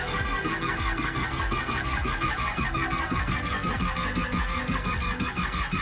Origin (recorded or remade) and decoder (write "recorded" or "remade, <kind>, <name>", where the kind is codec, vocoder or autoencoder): remade, codec, SNAC